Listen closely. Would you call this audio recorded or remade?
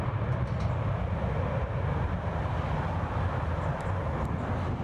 recorded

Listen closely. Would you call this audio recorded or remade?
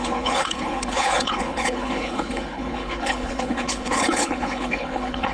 remade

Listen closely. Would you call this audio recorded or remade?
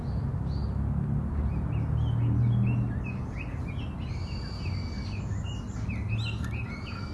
recorded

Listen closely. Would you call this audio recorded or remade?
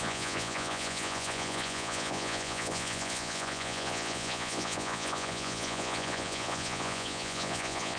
remade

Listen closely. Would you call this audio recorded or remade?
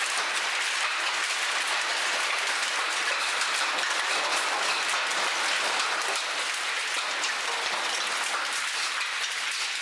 recorded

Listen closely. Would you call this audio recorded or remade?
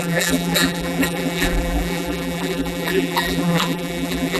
remade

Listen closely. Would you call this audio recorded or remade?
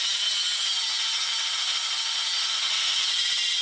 recorded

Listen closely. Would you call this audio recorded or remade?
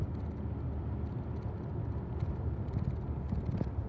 recorded